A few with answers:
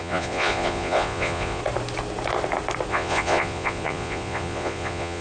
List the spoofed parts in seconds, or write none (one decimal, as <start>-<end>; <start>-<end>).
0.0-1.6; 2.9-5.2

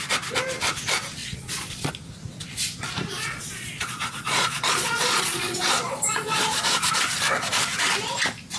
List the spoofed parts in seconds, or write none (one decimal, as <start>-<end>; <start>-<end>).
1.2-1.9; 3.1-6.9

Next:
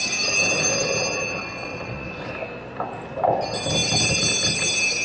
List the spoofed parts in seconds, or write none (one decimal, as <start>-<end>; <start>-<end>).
1.4-2.3

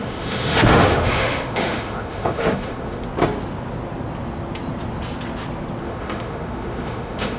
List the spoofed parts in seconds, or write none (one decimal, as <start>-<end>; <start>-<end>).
0.0-3.0; 5.8-7.4

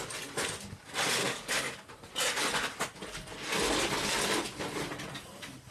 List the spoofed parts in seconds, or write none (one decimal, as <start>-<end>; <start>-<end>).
1.2-1.9